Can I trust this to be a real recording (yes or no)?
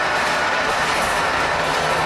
yes